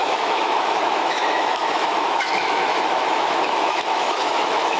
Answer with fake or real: fake